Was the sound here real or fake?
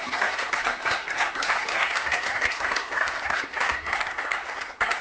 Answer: fake